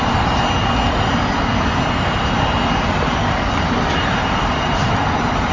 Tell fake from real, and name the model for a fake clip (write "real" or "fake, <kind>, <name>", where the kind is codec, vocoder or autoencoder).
real